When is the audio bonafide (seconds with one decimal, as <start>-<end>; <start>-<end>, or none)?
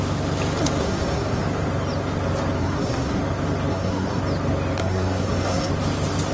0.0-0.8; 1.4-2.6; 3.2-3.7; 4.2-4.8; 5.7-6.3